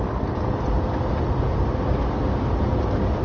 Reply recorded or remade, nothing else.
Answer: recorded